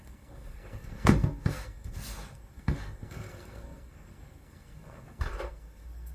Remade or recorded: remade